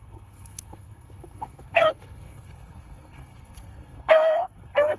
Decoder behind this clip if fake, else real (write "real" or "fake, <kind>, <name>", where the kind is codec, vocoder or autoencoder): fake, codec, SNAC